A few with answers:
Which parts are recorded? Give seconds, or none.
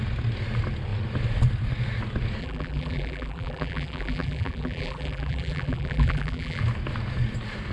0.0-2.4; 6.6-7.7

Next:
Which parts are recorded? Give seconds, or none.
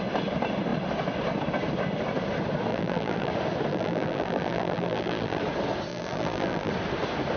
0.0-2.7; 3.3-3.7; 5.4-5.9; 6.7-7.4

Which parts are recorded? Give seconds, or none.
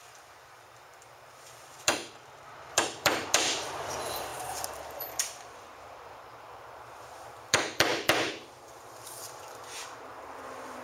2.0-2.7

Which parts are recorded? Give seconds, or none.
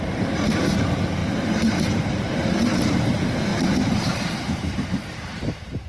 1.2-2.0; 3.5-4.3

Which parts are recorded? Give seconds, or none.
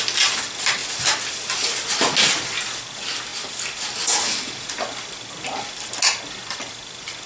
0.0-7.3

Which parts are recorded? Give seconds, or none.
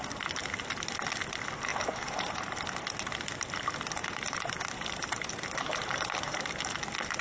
0.0-1.7; 2.5-4.0; 6.4-7.2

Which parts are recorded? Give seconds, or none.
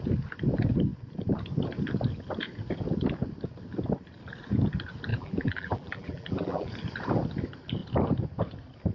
0.0-5.1; 6.7-8.9